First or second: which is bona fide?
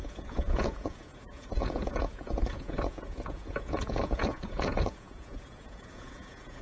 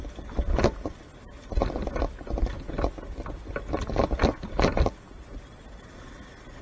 second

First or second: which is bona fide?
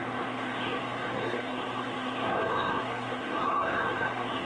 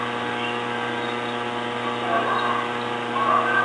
second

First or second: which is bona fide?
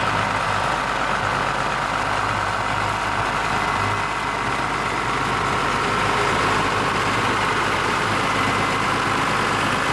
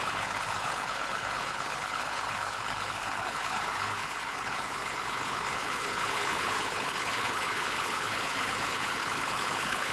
first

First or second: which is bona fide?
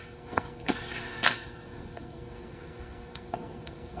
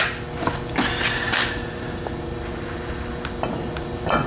second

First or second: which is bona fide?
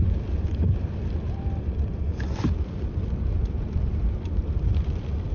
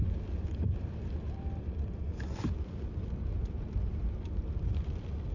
second